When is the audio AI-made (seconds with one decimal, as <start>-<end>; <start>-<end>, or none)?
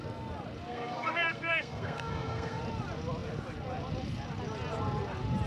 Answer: 0.7-2.6